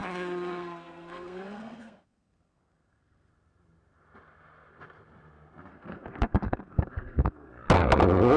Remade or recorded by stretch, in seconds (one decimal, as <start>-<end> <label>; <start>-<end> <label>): 0.0-3.3 remade; 3.3-5.7 recorded; 5.7-7.5 remade; 7.5-8.4 recorded